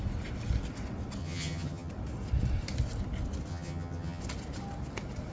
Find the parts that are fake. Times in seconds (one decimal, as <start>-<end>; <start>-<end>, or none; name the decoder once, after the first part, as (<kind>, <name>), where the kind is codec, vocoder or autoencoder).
1.2-1.9 (vocoder, HiFi-GAN); 3.5-4.2